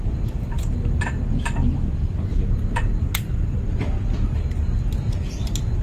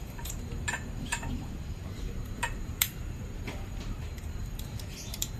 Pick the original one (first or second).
first